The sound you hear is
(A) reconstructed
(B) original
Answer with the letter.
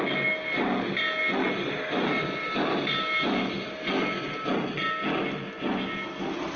B